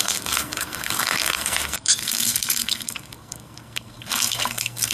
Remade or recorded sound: remade